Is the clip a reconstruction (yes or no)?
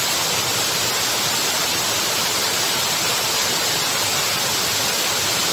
no